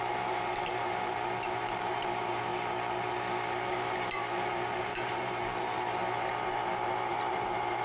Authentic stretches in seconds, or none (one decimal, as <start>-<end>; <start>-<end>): 2.5-3.7